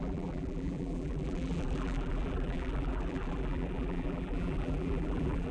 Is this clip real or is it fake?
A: fake